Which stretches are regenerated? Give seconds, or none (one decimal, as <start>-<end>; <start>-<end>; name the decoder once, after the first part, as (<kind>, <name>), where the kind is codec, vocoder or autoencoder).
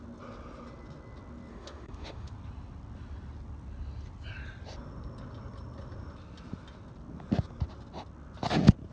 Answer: 1.5-2.3 (autoencoder, DAC-VAE)